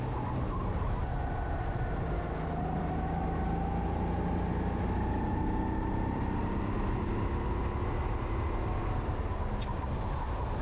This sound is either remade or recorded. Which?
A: recorded